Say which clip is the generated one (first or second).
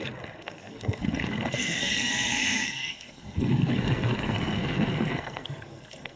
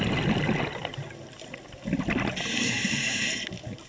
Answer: first